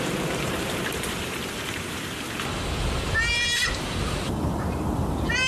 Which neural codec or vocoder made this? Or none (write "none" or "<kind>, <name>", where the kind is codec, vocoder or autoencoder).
vocoder, BigVGAN v2